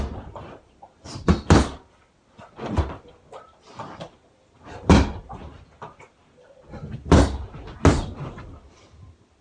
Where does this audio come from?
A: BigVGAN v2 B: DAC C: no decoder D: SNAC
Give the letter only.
C